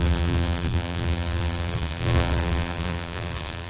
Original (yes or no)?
no